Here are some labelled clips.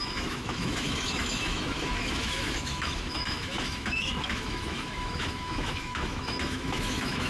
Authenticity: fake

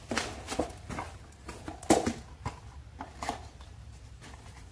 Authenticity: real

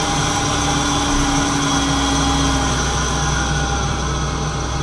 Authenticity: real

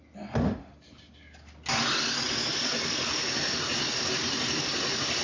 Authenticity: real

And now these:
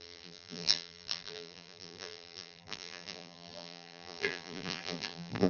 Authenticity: fake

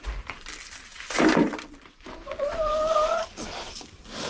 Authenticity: fake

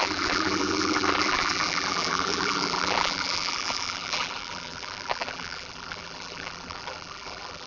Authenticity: fake